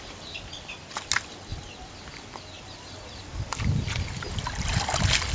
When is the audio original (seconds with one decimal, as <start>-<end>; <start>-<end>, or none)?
0.0-1.5; 3.6-5.3